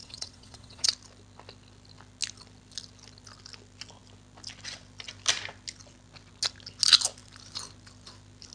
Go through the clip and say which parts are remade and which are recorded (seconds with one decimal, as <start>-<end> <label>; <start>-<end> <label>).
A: 0.0-0.9 remade; 0.9-8.5 recorded